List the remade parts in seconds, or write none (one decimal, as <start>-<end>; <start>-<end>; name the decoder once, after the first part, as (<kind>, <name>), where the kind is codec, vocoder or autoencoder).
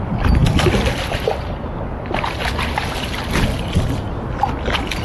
none